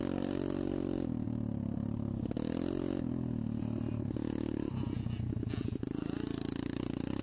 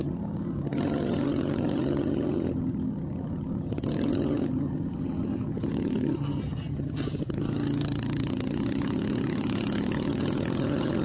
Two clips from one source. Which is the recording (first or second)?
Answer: first